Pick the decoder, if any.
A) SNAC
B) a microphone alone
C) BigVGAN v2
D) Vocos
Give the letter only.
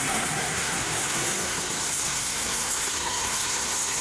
A